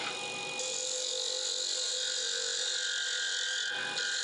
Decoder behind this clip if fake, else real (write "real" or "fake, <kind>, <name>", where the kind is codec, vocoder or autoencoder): real